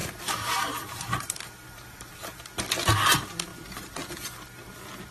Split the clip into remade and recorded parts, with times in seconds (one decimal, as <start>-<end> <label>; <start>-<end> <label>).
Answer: 0.0-2.4 remade; 2.4-5.1 recorded